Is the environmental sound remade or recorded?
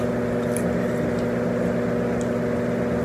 recorded